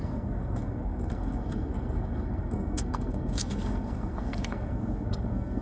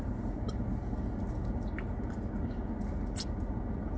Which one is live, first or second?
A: second